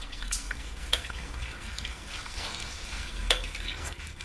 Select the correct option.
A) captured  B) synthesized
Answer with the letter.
B